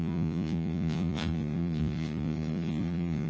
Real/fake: fake